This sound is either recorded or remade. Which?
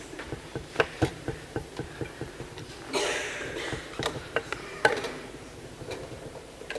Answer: remade